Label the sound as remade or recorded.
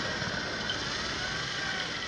recorded